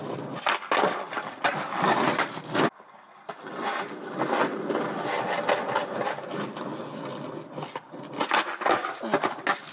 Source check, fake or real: real